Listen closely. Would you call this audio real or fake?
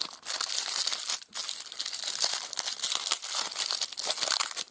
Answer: real